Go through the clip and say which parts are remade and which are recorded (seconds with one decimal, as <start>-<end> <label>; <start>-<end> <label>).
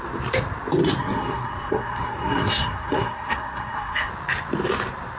0.0-1.0 recorded; 1.0-4.1 remade; 4.1-5.2 recorded